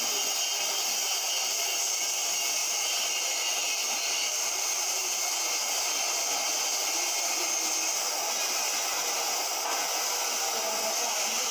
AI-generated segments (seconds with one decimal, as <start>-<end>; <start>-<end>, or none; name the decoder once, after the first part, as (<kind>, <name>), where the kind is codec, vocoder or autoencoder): 2.6-5.7 (vocoder, BigVGAN v2)